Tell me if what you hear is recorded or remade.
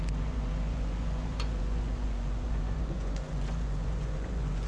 remade